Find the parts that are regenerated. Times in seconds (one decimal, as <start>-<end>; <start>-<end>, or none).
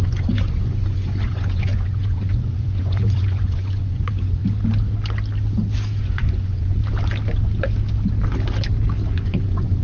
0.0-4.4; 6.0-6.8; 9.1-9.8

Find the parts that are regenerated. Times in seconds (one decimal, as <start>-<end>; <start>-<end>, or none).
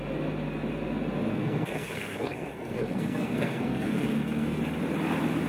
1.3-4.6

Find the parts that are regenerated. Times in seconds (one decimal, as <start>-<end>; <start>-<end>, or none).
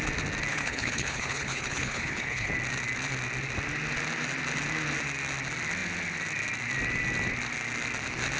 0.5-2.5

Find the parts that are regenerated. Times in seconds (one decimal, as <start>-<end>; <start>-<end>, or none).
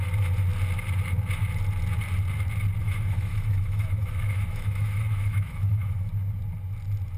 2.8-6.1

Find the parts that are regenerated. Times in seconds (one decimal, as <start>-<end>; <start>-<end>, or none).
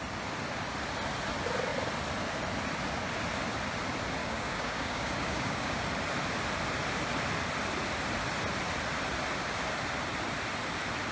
4.2-5.8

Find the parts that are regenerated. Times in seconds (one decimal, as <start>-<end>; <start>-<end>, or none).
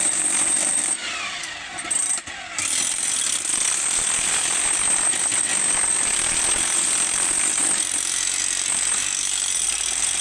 none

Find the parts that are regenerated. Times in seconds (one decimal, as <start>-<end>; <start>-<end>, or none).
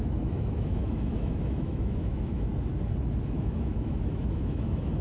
0.0-2.5; 3.3-5.0